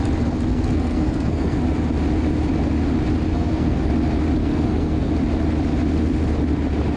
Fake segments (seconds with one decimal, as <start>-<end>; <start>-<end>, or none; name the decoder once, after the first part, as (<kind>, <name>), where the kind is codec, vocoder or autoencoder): 0.5-1.6 (codec, SNAC); 3.3-3.9; 4.4-5.1